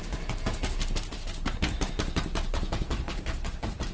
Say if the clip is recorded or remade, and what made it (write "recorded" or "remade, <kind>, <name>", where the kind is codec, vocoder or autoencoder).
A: recorded